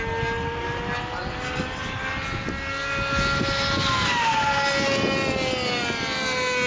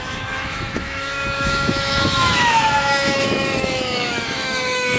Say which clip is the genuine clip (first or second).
first